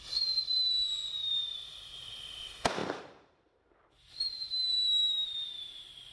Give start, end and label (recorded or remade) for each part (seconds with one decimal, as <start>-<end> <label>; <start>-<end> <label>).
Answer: 0.0-0.4 remade; 0.4-1.2 recorded; 1.2-6.1 remade

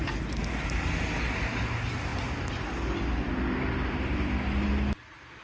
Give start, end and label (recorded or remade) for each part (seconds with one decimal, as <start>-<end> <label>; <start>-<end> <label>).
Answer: 0.0-5.4 recorded

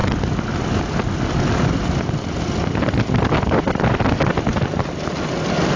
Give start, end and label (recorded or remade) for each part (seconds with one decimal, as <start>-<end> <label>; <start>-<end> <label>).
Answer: 0.0-5.8 recorded

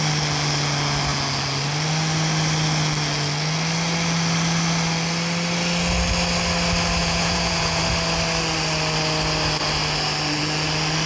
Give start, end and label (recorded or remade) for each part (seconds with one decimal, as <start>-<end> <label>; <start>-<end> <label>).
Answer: 0.0-7.0 recorded; 7.0-7.8 remade; 7.8-11.1 recorded

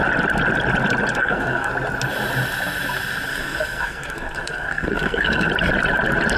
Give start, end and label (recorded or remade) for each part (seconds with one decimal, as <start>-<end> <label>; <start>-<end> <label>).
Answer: 0.0-1.2 recorded; 1.2-1.7 remade; 1.7-3.3 recorded; 3.3-5.5 remade; 5.5-6.4 recorded

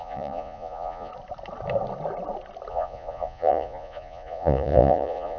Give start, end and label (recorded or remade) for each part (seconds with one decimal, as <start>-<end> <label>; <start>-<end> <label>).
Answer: 0.0-1.1 remade; 1.1-2.7 recorded; 2.7-5.4 remade

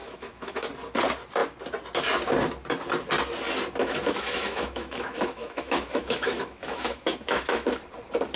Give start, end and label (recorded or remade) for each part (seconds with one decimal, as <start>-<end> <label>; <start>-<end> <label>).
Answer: 0.0-0.7 remade; 0.7-3.8 recorded; 3.8-7.8 remade; 7.8-8.4 recorded